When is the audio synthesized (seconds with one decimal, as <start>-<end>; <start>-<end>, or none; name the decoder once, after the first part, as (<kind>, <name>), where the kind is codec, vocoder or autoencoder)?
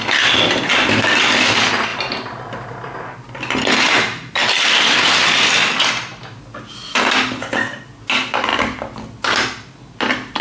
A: 1.9-2.4 (vocoder, BigVGAN v2)